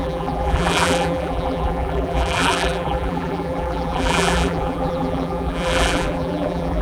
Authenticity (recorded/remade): remade